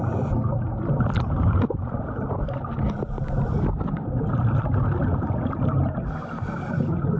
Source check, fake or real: real